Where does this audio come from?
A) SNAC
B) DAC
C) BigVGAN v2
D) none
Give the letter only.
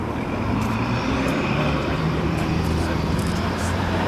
C